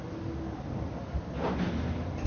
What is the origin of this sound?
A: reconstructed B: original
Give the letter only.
B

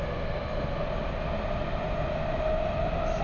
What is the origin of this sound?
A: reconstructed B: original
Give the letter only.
B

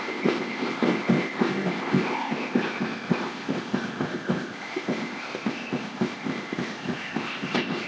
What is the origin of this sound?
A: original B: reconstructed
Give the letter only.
B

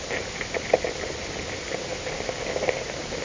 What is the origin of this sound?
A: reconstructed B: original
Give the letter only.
B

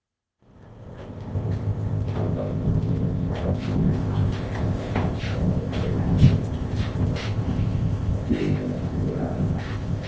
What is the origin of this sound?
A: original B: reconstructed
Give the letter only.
B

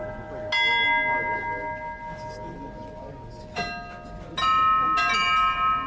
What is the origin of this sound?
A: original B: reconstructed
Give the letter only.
A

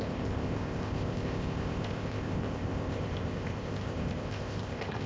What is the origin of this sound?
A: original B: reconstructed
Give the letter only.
B